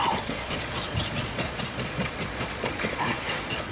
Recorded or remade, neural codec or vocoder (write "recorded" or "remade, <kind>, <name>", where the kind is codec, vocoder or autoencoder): remade, vocoder, Vocos